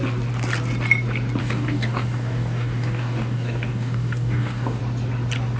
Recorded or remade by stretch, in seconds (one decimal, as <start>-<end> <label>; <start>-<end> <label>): 0.0-1.4 recorded; 1.4-4.8 remade; 4.8-5.6 recorded